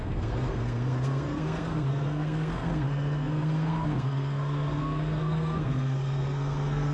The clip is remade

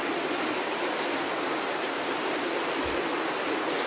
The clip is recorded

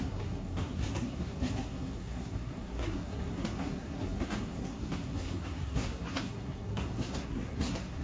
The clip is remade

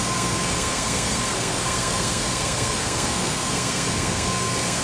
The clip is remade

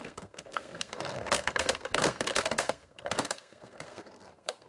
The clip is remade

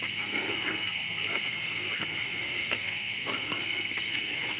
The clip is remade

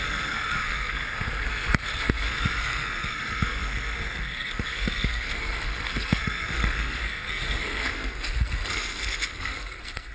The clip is remade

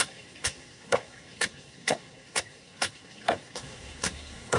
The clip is remade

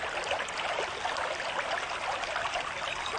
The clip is recorded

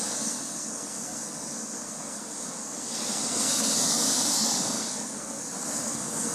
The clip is remade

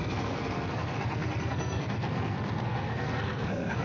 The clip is remade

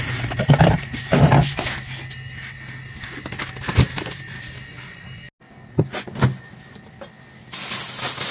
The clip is recorded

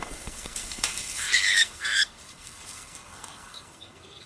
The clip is remade